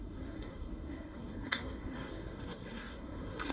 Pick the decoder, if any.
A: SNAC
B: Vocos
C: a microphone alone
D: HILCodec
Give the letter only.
A